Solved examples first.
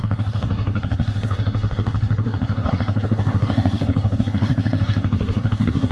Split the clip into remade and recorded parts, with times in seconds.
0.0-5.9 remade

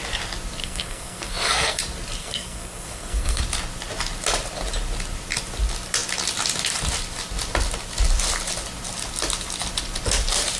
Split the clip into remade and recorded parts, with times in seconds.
0.0-0.6 recorded; 0.6-1.8 remade; 1.8-2.2 recorded; 2.2-3.4 remade; 3.4-10.6 recorded

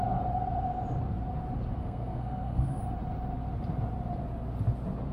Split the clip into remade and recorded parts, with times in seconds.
0.0-1.8 recorded; 1.8-2.8 remade; 2.8-5.1 recorded